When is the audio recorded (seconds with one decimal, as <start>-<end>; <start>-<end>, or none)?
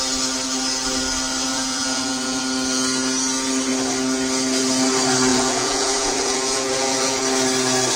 0.0-1.5; 2.4-5.3; 7.2-8.0